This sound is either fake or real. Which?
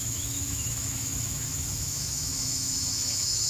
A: fake